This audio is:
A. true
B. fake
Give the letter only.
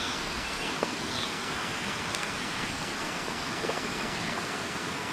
B